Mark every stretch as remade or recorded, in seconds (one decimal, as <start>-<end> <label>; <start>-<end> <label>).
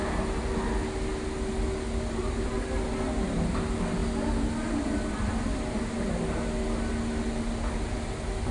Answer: 0.0-8.5 recorded